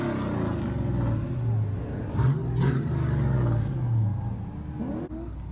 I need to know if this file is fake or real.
real